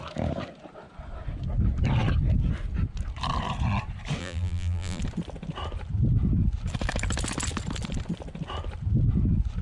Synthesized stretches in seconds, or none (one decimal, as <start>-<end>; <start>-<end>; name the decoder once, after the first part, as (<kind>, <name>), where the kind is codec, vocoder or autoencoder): 4.2-5.0 (vocoder, BigVGAN v2)